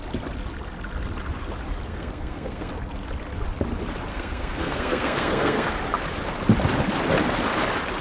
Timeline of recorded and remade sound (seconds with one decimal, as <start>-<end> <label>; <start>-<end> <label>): 0.0-1.9 recorded; 1.9-2.7 remade; 2.7-4.1 recorded; 4.1-5.7 remade; 5.7-8.0 recorded